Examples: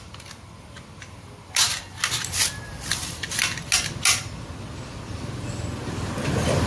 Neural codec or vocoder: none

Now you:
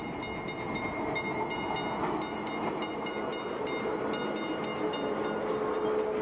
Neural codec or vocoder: none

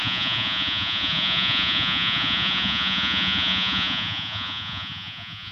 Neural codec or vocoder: vocoder, Vocos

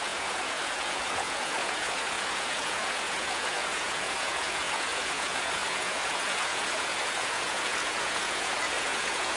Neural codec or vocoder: vocoder, Vocos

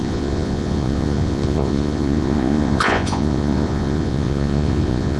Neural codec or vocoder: vocoder, Vocos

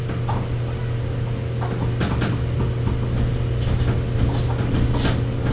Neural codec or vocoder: none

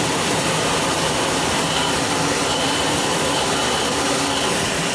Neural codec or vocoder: none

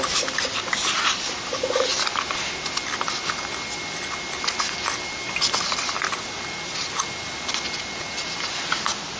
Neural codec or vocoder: none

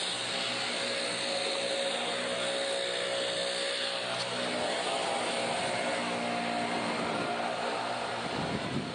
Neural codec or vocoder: none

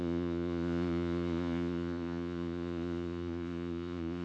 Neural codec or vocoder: vocoder, Vocos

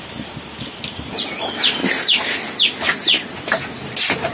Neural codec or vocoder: none